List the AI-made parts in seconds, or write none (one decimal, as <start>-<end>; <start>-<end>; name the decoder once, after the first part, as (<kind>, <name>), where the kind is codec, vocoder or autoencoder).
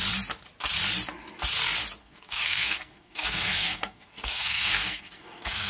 2.0-5.7 (codec, SNAC)